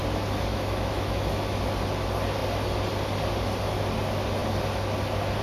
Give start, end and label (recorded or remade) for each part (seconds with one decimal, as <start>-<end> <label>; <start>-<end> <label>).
0.0-0.5 recorded; 0.5-1.6 remade; 1.6-5.4 recorded